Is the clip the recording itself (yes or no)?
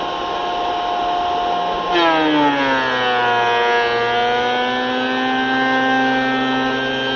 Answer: yes